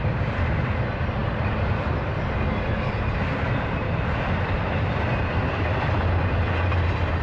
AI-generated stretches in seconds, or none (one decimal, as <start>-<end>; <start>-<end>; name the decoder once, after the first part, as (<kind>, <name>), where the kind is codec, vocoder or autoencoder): none